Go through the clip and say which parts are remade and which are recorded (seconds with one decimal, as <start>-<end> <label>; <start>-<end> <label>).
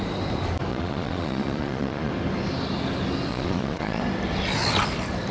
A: 0.0-0.7 recorded; 0.7-2.1 remade; 2.1-3.3 recorded; 3.3-4.0 remade; 4.0-5.3 recorded